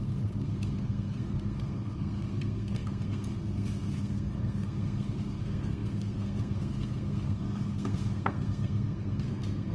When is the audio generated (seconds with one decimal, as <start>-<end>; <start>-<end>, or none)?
0.0-9.7